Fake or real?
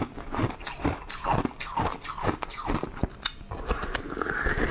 real